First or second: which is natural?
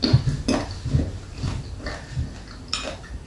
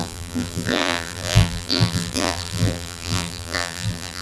first